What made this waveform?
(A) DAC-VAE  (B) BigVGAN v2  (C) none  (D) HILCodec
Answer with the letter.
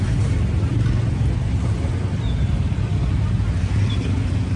C